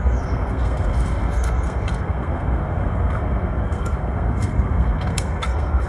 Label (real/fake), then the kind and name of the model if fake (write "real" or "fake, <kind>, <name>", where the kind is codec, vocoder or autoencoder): fake, codec, SNAC